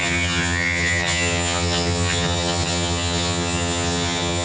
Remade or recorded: remade